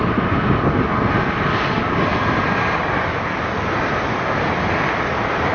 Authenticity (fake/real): real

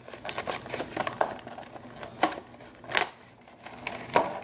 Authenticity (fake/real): real